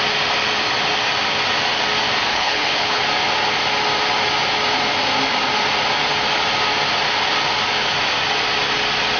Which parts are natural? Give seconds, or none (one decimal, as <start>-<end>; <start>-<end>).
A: 0.0-2.3; 3.0-9.2